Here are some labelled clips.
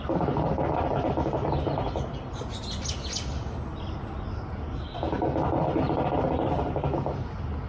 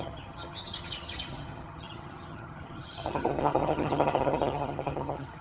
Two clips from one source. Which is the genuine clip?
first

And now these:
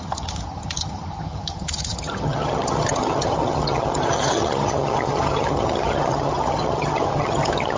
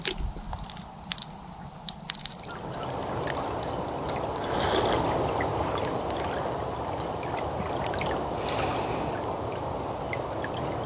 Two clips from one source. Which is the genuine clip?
second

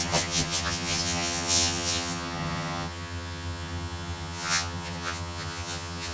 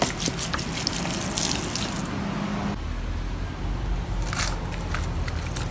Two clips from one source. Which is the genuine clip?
second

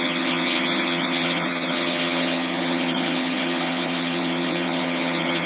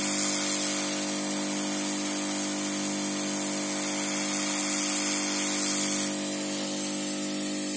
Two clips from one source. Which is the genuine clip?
second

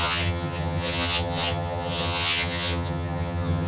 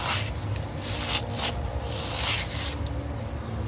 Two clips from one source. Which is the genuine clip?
second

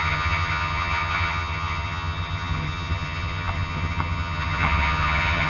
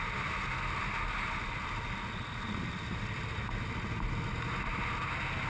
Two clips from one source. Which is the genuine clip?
second